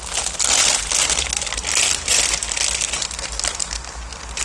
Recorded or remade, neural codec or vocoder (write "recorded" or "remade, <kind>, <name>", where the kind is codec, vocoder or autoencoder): recorded